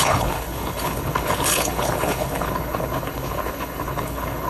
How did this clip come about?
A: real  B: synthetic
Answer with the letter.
B